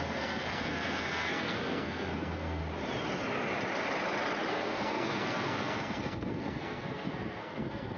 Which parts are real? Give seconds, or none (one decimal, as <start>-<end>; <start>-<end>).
2.6-4.5